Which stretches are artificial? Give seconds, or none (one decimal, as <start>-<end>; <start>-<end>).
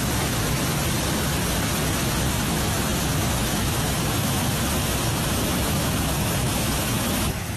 0.0-0.7; 1.8-7.6